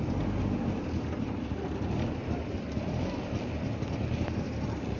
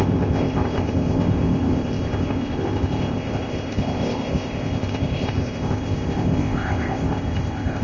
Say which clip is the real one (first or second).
first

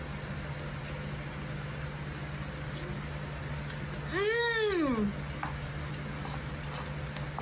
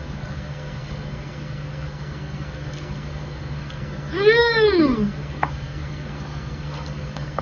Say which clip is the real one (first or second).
first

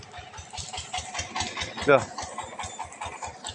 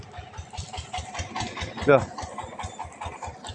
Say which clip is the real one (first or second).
first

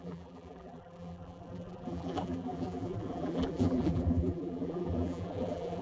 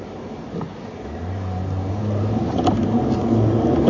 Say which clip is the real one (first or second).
second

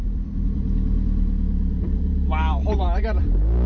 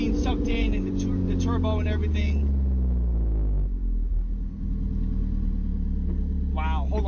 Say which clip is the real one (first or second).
second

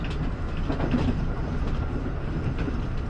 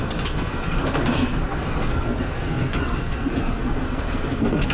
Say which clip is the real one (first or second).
first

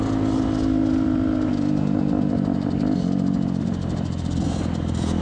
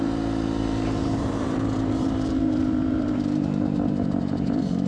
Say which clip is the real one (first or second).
first